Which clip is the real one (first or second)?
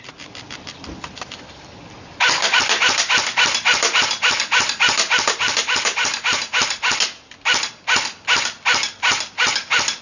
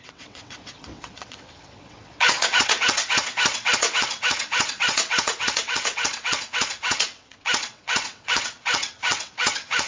first